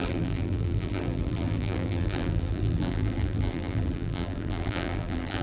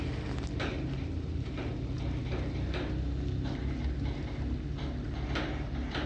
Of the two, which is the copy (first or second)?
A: first